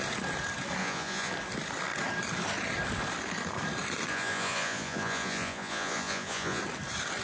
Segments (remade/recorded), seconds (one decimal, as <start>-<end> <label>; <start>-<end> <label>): 0.0-0.8 recorded; 0.8-1.3 remade; 1.3-4.1 recorded; 4.1-6.6 remade; 6.6-7.2 recorded